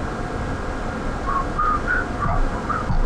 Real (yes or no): no